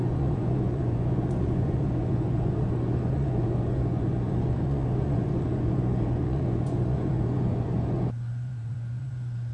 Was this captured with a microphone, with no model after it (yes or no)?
no